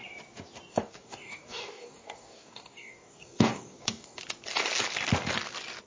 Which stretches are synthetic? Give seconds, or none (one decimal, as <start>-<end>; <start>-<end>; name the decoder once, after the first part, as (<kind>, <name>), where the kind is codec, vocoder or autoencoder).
0.7-4.2 (codec, DAC)

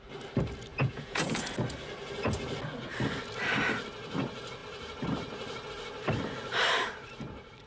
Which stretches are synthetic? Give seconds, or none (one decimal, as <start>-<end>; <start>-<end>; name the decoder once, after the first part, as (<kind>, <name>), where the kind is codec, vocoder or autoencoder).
0.7-1.4 (vocoder, Vocos)

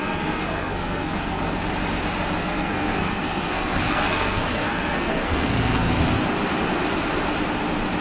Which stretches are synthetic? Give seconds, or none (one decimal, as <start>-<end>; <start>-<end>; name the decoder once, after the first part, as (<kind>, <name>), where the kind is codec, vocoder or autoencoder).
0.0-1.6 (codec, SNAC); 2.4-6.0

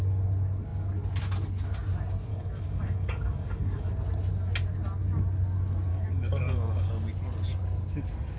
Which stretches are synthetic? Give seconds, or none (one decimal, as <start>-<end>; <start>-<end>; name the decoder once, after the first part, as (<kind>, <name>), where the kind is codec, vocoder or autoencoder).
2.3-3.9 (codec, DAC); 5.9-6.9

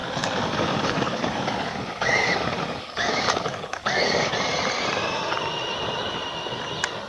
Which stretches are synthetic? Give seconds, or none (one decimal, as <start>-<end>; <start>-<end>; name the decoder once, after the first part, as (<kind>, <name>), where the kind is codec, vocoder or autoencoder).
0.0-4.3 (codec, DAC)

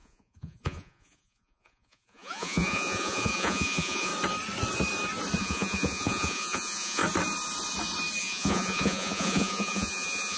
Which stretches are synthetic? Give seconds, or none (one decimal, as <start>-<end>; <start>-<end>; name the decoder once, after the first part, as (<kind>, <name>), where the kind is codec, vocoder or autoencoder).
0.0-4.1 (vocoder, Vocos); 5.4-7.0; 8.2-10.4

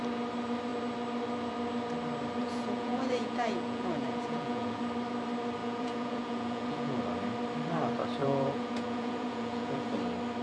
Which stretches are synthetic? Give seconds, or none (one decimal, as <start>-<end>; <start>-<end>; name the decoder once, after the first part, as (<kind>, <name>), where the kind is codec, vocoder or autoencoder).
2.4-4.8 (vocoder, Vocos); 5.6-7.0; 8.2-9.9

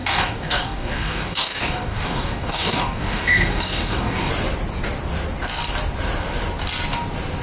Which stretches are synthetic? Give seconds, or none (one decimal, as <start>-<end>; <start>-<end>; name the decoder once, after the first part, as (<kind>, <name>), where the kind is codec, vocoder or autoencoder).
0.0-4.3 (codec, DAC)